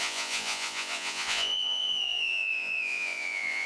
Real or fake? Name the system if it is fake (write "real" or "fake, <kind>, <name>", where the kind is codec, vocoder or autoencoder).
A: fake, vocoder, Vocos